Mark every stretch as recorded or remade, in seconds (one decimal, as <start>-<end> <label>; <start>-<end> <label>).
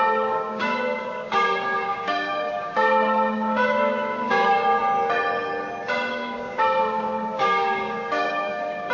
0.0-4.8 remade; 4.8-6.1 recorded; 6.1-8.9 remade